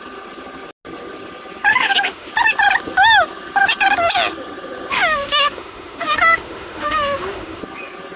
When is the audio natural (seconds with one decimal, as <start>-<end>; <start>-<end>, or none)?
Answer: 0.0-1.7; 2.3-4.9; 7.6-8.2